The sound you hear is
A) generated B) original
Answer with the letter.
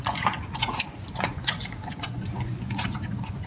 A